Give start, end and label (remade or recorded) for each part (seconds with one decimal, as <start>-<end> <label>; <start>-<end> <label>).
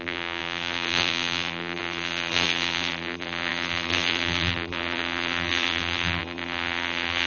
0.0-7.3 remade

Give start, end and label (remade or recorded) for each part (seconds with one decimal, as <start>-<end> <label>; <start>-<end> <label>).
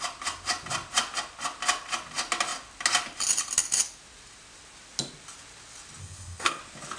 0.0-6.0 recorded; 6.0-6.6 remade; 6.6-7.0 recorded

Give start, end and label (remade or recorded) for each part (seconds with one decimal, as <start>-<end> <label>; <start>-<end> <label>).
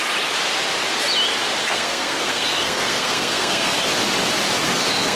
0.0-1.6 recorded; 1.6-3.8 remade; 3.8-4.6 recorded; 4.6-5.2 remade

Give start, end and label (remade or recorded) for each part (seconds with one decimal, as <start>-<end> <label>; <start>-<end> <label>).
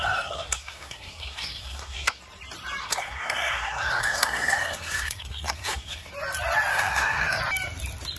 0.0-2.2 remade; 2.2-2.8 recorded; 2.8-6.1 remade; 6.1-6.7 recorded; 6.7-7.4 remade; 7.4-8.2 recorded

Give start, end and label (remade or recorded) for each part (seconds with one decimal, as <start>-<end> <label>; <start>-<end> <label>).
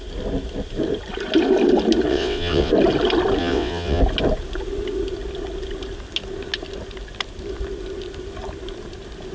0.0-2.1 recorded; 2.1-2.7 remade; 2.7-3.4 recorded; 3.4-4.0 remade; 4.0-9.3 recorded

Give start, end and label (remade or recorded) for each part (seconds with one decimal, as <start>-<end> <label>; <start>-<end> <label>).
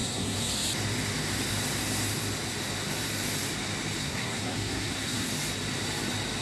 0.0-0.5 remade; 0.5-4.0 recorded; 4.0-5.3 remade; 5.3-6.4 recorded